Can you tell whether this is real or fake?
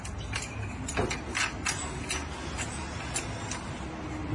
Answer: real